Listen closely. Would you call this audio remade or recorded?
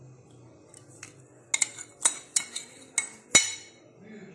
recorded